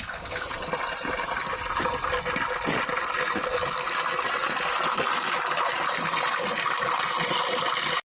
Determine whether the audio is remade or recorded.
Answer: recorded